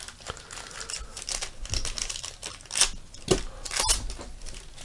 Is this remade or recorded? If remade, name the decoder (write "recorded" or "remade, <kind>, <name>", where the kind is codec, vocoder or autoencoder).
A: recorded